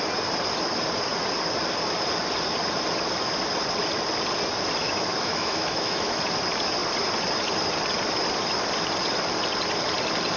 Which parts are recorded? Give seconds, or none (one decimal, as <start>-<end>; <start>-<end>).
0.0-4.8; 6.2-10.4